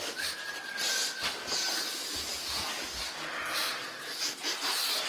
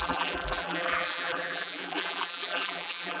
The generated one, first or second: second